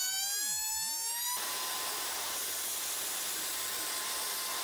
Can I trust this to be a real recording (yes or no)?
yes